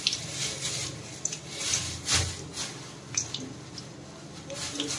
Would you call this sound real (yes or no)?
yes